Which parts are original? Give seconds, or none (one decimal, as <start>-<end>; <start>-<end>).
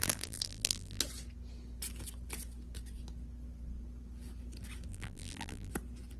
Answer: 1.0-4.9; 5.7-6.2